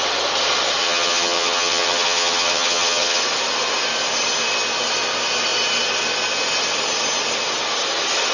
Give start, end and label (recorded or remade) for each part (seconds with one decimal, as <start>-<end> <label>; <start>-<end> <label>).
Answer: 0.0-0.8 recorded; 0.8-3.2 remade; 3.2-8.3 recorded